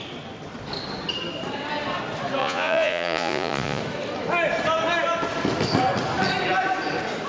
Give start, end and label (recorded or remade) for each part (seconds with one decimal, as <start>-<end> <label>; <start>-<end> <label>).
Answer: 0.0-2.4 recorded; 2.4-3.8 remade; 3.8-7.3 recorded